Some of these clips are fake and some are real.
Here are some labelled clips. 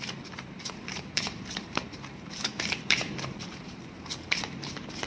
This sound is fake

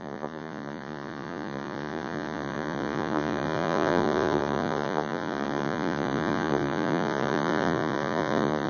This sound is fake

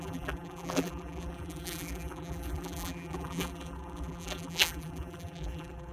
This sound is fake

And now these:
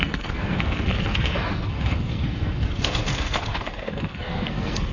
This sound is fake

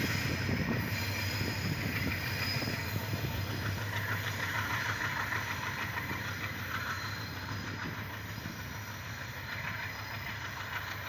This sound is fake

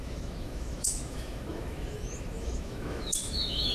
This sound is fake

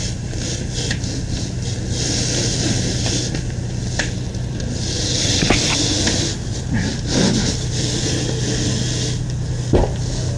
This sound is real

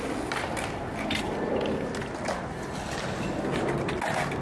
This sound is real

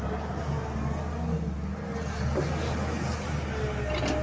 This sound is real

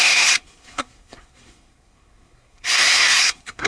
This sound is fake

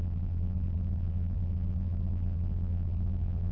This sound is fake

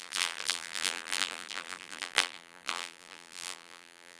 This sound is fake